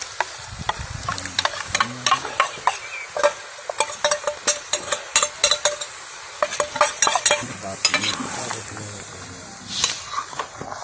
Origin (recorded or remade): recorded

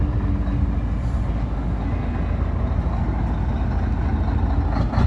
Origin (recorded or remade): recorded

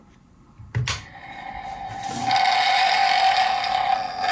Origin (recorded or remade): recorded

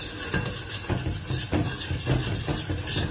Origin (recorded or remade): recorded